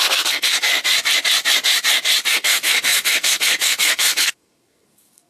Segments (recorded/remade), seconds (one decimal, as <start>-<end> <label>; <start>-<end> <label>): 0.0-0.7 remade; 0.7-2.3 recorded; 2.3-5.3 remade